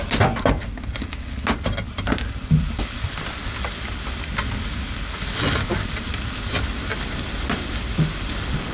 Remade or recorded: recorded